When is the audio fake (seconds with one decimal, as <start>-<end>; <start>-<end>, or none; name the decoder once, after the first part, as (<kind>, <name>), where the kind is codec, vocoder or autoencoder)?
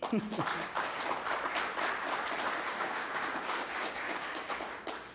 0.5-1.0 (codec, DAC); 2.7-4.5